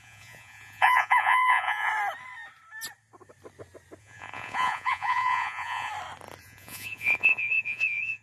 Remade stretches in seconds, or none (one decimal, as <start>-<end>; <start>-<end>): 0.0-1.9; 4.0-5.9; 6.4-8.2